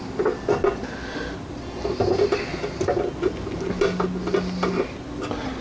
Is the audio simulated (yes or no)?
no